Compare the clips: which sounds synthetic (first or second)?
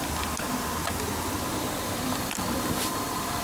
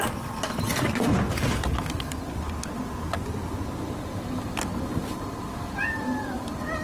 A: second